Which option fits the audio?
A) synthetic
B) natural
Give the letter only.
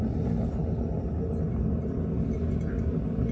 B